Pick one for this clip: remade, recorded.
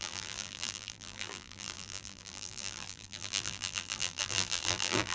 remade